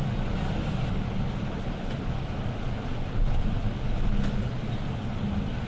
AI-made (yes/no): no